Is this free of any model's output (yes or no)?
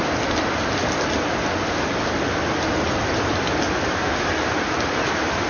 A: yes